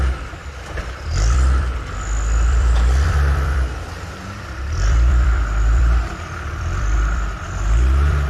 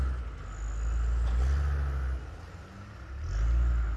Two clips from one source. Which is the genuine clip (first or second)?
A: second